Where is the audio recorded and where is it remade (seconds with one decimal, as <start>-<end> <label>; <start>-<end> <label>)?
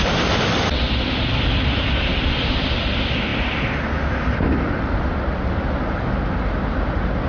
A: 0.0-2.1 recorded; 2.1-2.6 remade; 2.6-7.3 recorded